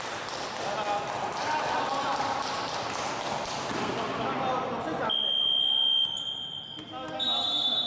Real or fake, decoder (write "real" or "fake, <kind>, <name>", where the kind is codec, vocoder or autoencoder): real